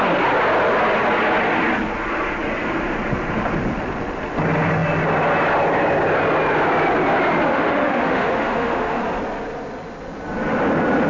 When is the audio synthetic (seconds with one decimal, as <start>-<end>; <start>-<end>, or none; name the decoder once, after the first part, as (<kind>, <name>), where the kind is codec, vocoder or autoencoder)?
7.5-9.0 (autoencoder, DAC-VAE)